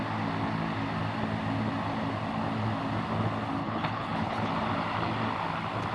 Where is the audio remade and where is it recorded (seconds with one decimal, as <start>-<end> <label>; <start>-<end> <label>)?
0.0-3.6 recorded; 3.6-4.5 remade; 4.5-5.9 recorded